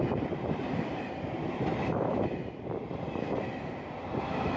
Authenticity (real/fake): real